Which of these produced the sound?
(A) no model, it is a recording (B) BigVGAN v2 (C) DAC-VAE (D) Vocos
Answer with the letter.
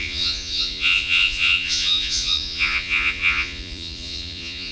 D